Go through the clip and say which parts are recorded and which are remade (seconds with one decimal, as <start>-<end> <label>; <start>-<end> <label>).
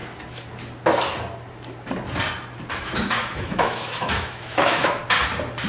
0.0-2.8 recorded; 2.8-5.0 remade; 5.0-5.7 recorded